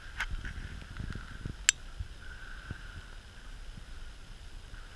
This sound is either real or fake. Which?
real